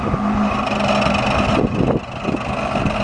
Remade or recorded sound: recorded